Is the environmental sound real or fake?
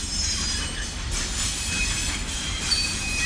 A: fake